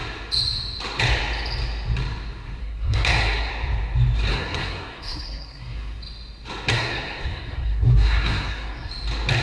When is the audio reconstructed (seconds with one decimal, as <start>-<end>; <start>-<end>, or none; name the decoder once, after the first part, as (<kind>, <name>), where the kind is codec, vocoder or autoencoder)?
2.6-3.5 (codec, SNAC); 4.3-6.0; 6.7-8.9